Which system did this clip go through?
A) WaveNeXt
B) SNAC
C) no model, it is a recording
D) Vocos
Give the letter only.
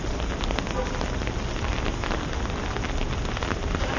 C